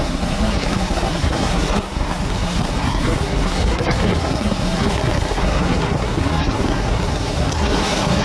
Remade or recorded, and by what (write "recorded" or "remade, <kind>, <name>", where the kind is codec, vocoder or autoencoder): remade, codec, SNAC